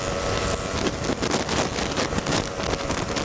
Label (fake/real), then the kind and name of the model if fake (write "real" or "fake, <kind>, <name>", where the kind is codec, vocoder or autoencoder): real